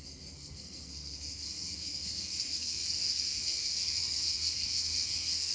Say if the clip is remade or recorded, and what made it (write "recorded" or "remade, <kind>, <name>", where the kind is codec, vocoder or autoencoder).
remade, codec, SNAC